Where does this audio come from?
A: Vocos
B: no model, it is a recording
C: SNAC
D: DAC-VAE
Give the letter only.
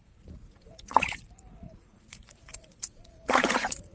A